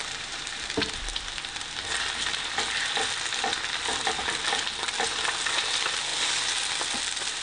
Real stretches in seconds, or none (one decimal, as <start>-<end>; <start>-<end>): 0.0-7.4